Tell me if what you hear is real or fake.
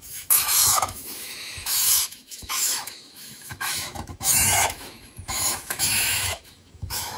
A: fake